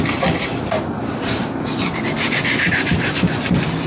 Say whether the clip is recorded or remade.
recorded